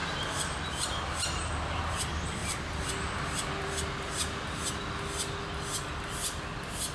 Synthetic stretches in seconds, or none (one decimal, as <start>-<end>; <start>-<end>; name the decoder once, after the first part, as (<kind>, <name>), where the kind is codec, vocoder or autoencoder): 0.0-1.9 (vocoder, BigVGAN v2); 2.4-2.9